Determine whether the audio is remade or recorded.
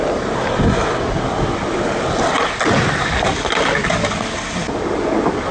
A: recorded